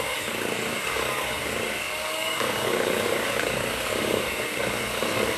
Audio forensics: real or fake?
fake